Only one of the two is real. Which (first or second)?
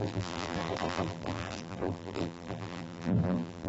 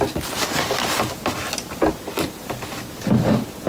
second